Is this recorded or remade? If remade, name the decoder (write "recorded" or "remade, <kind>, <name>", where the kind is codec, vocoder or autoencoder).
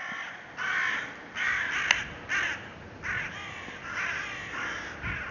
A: recorded